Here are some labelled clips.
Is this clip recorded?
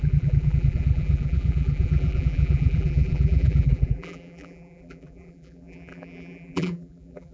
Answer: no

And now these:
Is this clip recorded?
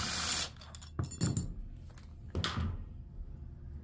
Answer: yes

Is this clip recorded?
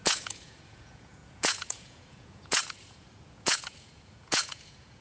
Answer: no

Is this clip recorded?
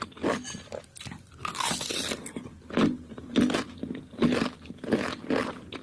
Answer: yes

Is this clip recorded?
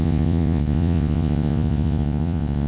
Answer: no